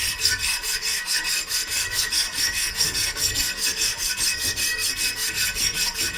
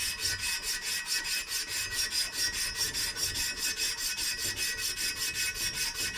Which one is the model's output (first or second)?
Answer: first